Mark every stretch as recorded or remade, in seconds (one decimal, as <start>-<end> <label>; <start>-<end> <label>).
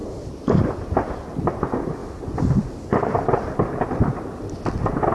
0.0-5.1 recorded